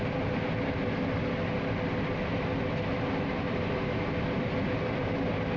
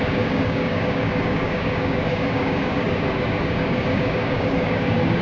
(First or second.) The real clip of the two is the first